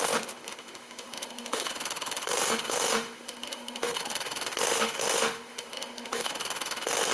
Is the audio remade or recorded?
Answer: remade